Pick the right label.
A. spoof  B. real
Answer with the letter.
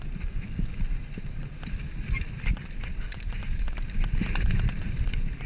B